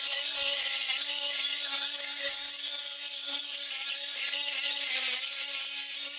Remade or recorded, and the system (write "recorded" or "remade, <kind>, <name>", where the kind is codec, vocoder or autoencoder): recorded